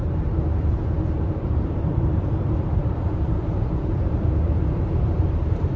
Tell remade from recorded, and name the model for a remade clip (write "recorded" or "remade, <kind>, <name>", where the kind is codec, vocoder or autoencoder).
remade, vocoder, BigVGAN v2